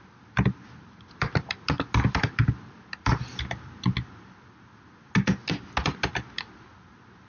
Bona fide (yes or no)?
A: yes